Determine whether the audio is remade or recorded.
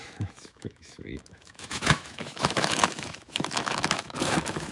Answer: remade